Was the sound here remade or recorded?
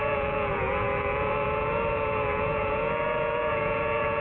remade